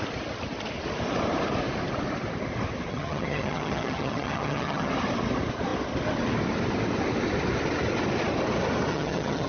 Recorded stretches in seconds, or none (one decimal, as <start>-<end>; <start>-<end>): 0.0-2.9; 4.9-8.9